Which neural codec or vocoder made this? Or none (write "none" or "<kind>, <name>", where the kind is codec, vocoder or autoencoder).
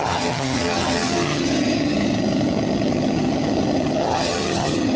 vocoder, HiFi-GAN